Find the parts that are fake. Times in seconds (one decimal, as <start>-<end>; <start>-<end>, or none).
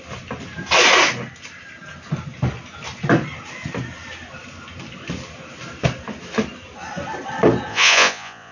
7.7-8.5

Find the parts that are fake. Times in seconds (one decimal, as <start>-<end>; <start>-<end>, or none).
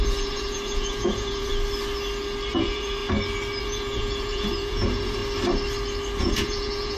0.0-1.5; 2.5-3.0; 3.6-5.2; 6.2-7.0